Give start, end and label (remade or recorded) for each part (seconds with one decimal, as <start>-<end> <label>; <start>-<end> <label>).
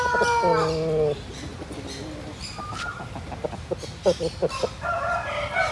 0.0-5.7 recorded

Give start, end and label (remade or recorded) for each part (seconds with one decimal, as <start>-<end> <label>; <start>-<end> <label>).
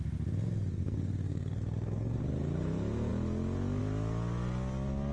0.0-0.8 recorded; 0.8-2.2 remade; 2.2-5.1 recorded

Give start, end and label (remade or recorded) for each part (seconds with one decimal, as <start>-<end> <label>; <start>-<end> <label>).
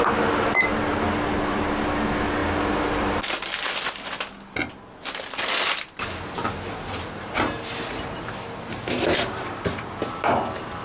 0.0-10.8 recorded